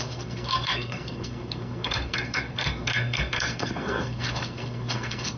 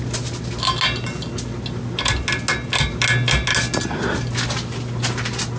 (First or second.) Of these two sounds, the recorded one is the second